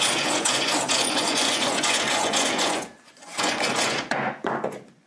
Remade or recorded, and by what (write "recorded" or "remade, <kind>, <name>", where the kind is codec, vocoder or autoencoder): remade, vocoder, Vocos